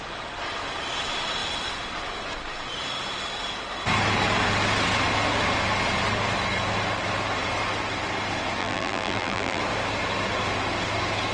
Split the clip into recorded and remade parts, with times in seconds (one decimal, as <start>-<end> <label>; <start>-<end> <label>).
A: 0.0-8.6 recorded; 8.6-9.6 remade; 9.6-11.3 recorded